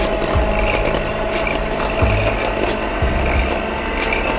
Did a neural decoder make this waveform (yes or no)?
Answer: no